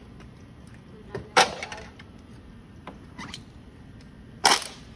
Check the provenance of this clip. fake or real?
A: fake